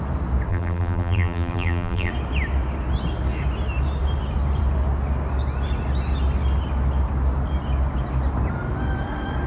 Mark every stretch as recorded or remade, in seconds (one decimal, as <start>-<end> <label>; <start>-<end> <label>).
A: 0.0-0.5 recorded; 0.5-2.1 remade; 2.1-9.5 recorded